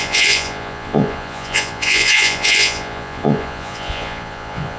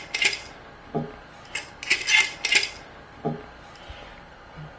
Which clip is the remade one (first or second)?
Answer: first